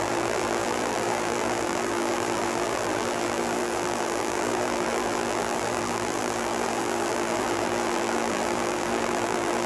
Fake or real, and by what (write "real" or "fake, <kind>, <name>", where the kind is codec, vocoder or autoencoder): fake, vocoder, BigVGAN v2